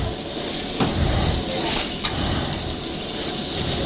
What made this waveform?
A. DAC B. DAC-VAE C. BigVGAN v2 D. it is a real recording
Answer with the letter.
D